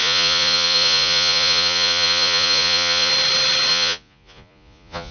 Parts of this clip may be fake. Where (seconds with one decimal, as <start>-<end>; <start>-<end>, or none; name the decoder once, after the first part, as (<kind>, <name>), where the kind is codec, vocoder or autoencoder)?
0.0-3.1 (vocoder, Vocos); 3.7-5.1